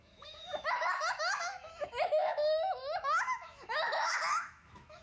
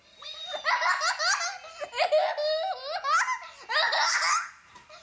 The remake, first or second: first